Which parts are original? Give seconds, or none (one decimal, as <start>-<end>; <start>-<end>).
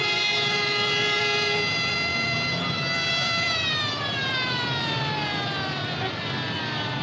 0.0-7.0